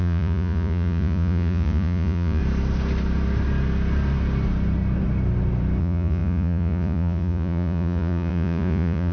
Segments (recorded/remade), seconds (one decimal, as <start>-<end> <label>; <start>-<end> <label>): 0.0-2.4 remade; 2.4-5.8 recorded; 5.8-9.1 remade